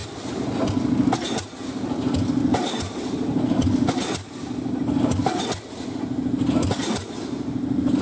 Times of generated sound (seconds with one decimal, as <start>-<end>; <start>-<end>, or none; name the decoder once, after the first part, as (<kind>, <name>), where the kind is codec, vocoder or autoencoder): 0.0-0.7 (vocoder, BigVGAN v2)